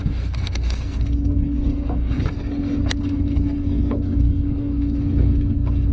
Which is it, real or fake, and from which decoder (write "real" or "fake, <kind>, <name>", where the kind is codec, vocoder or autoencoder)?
fake, codec, SNAC